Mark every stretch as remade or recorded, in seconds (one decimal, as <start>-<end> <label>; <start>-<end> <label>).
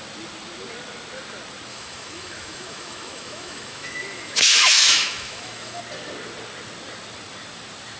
0.0-1.7 recorded; 1.7-5.8 remade; 5.8-8.0 recorded